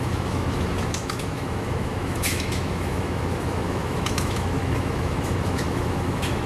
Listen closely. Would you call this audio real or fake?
fake